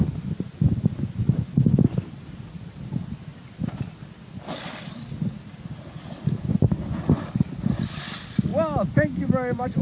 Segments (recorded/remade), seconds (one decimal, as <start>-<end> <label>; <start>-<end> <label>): 0.0-9.8 recorded